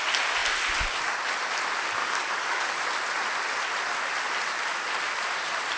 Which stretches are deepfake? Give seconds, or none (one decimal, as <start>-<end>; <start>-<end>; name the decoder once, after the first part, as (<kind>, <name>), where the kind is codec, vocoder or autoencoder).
2.0-2.8 (codec, DAC)